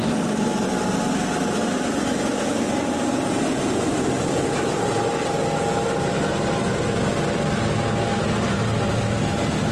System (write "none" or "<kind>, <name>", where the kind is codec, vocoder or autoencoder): none